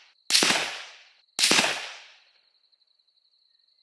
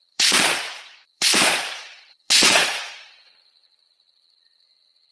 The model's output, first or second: second